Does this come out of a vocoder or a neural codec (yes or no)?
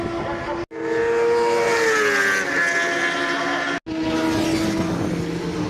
no